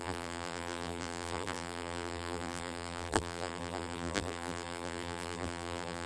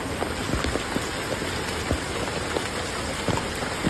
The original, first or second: second